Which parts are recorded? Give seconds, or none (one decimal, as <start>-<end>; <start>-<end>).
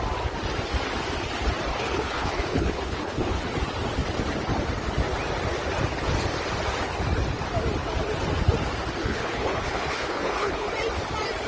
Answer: 0.0-1.7; 3.4-9.0; 10.7-11.5